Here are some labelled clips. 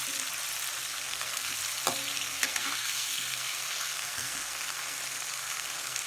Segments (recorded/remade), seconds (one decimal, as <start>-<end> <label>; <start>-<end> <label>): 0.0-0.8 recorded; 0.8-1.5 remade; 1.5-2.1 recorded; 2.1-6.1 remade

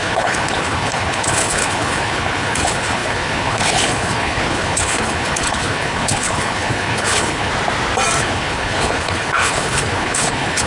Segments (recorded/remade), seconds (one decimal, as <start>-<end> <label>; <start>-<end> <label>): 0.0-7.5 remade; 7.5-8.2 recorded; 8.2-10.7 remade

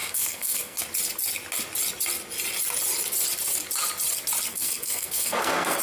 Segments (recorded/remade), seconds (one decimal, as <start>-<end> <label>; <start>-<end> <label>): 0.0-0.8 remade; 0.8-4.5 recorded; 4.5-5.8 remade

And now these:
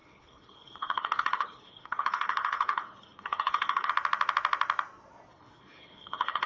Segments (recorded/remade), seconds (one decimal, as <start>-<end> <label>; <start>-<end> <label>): 0.0-3.9 remade; 3.9-5.3 recorded; 5.3-6.5 remade

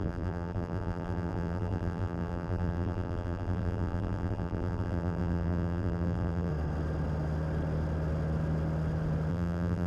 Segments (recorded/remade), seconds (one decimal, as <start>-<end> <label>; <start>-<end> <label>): 0.0-6.5 remade; 6.5-9.3 recorded; 9.3-9.9 remade

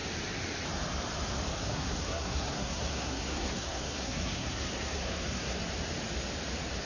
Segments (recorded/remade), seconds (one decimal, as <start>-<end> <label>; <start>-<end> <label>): 0.0-1.5 recorded; 1.5-5.6 remade; 5.6-6.9 recorded